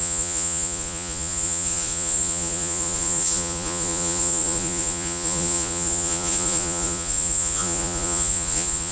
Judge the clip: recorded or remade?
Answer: remade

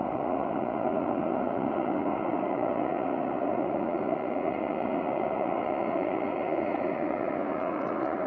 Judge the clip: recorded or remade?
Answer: remade